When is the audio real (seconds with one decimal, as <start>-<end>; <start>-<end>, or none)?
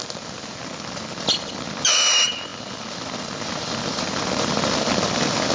0.0-5.5